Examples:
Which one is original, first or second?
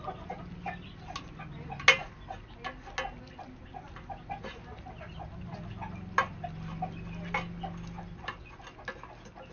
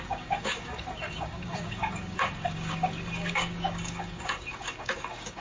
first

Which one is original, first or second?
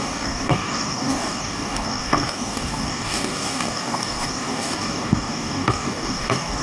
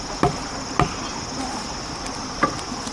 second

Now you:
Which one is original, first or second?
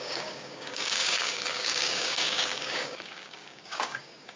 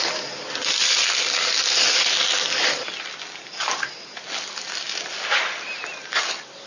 second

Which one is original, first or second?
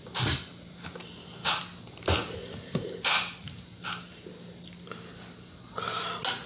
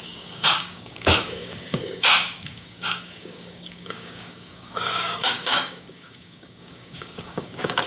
first